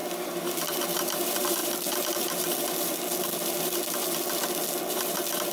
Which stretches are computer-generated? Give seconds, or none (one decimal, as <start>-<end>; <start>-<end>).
0.7-1.6; 4.9-5.5